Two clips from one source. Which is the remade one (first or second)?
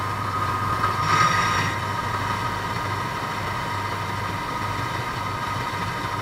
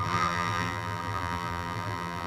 second